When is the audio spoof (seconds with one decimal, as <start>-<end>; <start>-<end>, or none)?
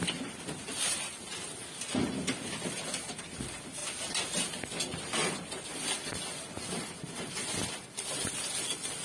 none